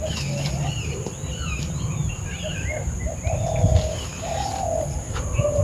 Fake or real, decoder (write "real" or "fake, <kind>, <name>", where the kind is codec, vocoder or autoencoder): real